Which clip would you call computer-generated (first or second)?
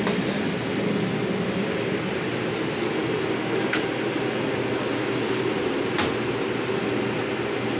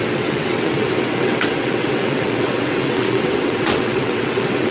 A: second